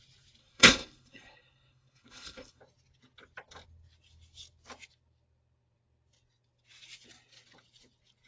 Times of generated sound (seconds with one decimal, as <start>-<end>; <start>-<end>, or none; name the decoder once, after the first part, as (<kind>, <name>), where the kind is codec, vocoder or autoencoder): 0.4-2.6 (codec, HILCodec)